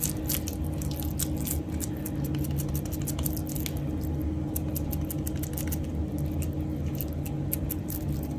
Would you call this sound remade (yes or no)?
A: no